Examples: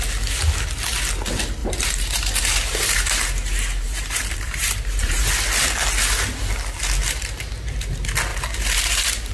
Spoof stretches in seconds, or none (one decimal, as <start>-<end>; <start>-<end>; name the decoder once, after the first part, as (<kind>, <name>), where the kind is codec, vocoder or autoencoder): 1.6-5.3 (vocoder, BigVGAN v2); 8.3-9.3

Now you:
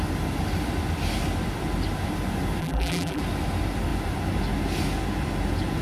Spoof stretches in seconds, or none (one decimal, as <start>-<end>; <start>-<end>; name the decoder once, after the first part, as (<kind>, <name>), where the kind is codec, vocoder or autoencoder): 2.6-3.2 (vocoder, BigVGAN v2)

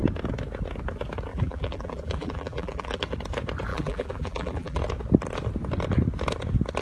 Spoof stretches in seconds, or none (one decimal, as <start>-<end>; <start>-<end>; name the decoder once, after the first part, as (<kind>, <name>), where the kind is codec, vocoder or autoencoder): 1.3-3.0 (vocoder, BigVGAN v2); 3.7-4.8

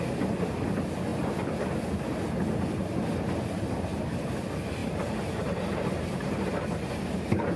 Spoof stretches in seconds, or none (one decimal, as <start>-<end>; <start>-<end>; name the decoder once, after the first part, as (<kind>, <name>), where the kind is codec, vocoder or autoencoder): 4.8-6.1 (vocoder, BigVGAN v2)